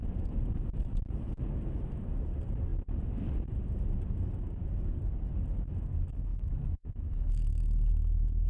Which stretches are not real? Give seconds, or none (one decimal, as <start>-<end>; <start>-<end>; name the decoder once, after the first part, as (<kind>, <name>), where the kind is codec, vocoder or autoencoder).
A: 6.3-7.9 (autoencoder, DAC-VAE)